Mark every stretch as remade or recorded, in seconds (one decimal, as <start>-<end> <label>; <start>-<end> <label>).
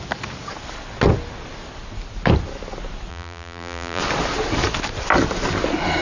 0.0-3.1 recorded; 3.1-4.0 remade; 4.0-6.0 recorded